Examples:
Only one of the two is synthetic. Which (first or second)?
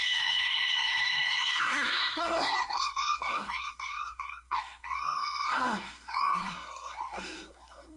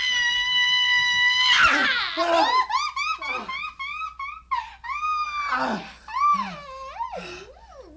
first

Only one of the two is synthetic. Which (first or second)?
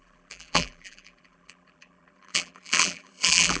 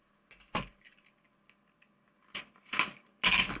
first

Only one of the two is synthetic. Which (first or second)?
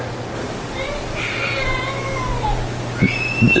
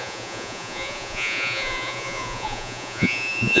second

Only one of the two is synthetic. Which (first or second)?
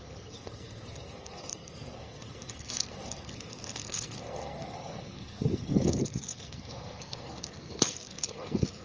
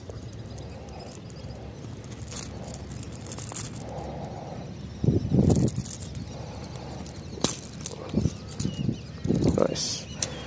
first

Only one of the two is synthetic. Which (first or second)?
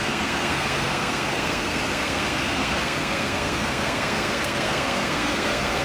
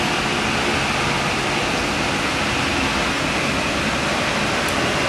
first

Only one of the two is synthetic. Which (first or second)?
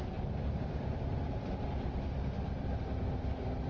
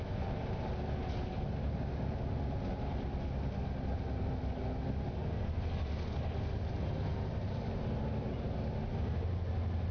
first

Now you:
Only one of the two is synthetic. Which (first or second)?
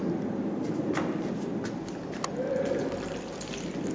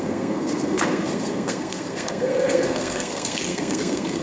second